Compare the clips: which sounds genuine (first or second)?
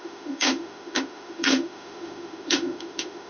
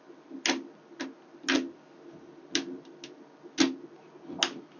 second